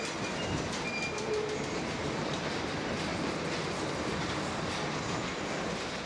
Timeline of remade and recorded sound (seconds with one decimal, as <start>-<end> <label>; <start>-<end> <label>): 0.0-6.1 recorded